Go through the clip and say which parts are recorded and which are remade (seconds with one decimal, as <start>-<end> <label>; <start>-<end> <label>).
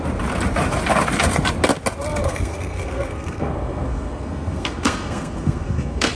0.0-2.2 recorded; 2.2-6.1 remade